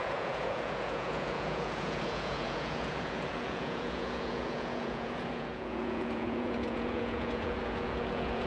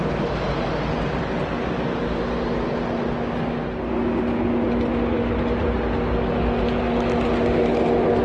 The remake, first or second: first